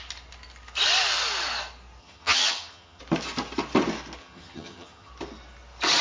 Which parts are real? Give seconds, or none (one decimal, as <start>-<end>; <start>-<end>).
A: 0.0-2.0; 3.0-4.2; 5.1-6.0